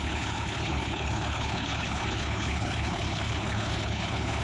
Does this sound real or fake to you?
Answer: fake